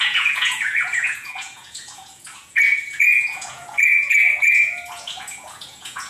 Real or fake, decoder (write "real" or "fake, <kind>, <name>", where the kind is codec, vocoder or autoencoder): fake, vocoder, Vocos